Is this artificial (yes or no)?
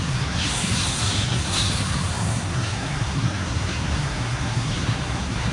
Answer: yes